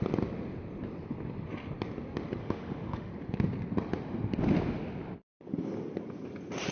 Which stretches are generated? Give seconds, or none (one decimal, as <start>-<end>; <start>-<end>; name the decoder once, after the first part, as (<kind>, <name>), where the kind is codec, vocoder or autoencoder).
2.4-3.1 (autoencoder, DAC-VAE)